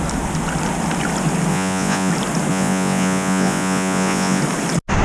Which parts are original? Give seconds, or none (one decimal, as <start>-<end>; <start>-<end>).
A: 0.0-1.5; 2.1-2.5; 4.4-5.0